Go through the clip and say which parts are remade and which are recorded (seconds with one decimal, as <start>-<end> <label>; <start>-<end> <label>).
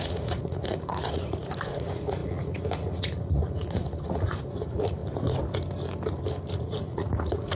0.0-5.0 remade; 5.0-6.5 recorded; 6.5-7.5 remade